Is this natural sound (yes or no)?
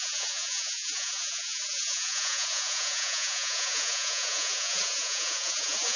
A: no